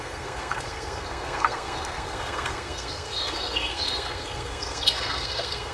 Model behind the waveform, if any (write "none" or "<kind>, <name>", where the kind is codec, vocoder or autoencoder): codec, SNAC